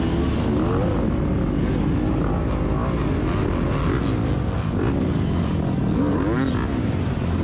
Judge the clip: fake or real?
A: real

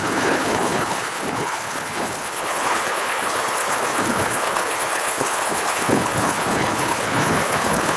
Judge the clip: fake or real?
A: fake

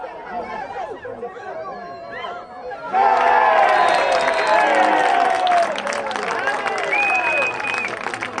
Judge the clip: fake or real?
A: real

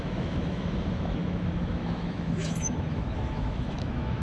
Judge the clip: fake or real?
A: fake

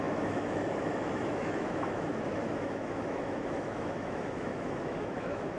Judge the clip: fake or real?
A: fake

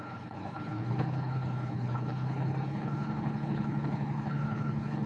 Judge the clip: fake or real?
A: fake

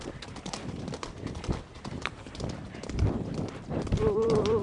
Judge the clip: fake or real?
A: fake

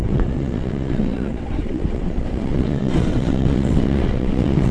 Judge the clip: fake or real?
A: fake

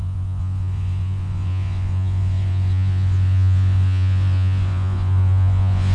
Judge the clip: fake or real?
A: fake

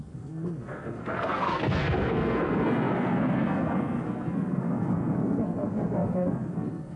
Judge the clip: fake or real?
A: fake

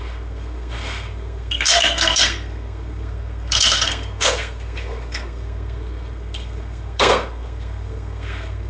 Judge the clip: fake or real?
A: fake